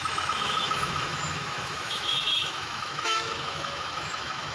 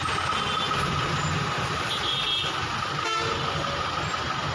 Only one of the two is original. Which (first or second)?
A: second